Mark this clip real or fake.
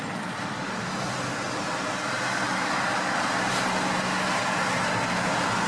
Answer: real